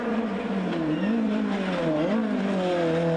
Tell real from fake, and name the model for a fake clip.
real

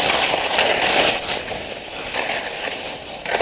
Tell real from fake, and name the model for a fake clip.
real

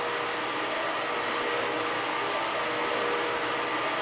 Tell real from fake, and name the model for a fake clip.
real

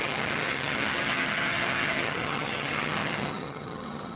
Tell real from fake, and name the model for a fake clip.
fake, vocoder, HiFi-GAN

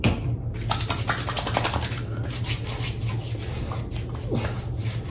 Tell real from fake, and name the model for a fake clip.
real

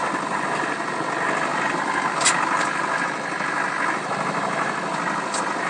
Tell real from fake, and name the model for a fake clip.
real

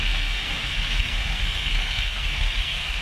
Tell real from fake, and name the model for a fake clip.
fake, codec, SNAC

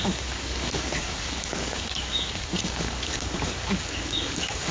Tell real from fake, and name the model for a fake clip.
fake, codec, DAC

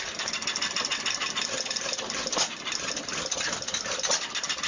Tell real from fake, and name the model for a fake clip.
real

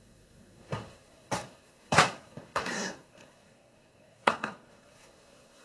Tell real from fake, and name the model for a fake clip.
fake, codec, SNAC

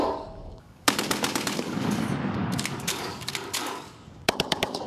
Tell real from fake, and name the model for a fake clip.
fake, codec, DAC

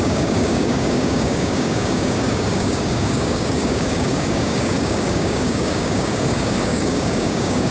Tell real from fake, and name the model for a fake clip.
fake, codec, DAC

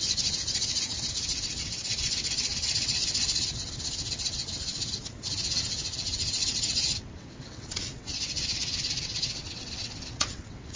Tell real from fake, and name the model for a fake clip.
fake, vocoder, WaveNeXt